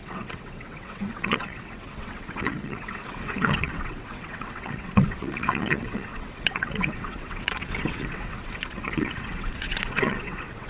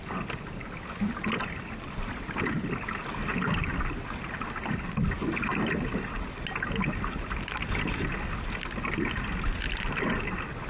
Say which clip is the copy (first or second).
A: first